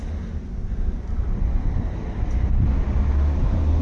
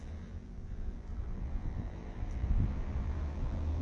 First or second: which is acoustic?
first